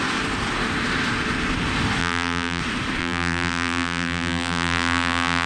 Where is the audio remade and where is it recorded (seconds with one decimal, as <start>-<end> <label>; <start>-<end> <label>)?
0.0-2.0 recorded; 2.0-2.6 remade; 2.6-3.0 recorded; 3.0-5.5 remade